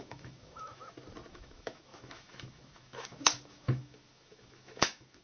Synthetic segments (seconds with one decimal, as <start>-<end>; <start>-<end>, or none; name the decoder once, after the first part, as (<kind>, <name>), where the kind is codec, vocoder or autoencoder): 0.0-0.8 (autoencoder, DAC-VAE); 1.3-5.2